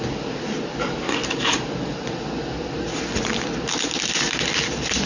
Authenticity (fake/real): real